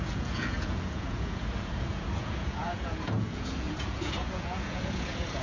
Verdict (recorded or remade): remade